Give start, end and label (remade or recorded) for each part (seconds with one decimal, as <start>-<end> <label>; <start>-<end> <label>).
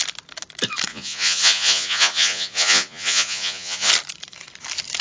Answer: 0.0-0.9 recorded; 0.9-3.9 remade; 3.9-5.0 recorded